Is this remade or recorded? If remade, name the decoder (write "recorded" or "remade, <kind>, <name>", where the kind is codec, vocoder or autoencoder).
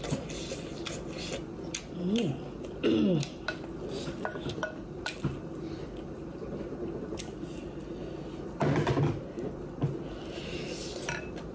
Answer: recorded